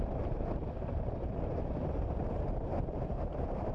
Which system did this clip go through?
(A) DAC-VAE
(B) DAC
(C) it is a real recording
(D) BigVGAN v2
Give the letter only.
C